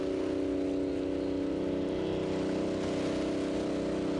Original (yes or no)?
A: yes